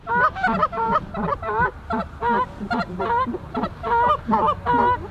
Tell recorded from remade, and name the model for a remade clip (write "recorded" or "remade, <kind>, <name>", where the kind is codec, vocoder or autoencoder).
remade, vocoder, BigVGAN v2